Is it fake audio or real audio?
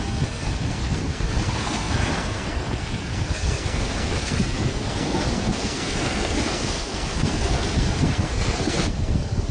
fake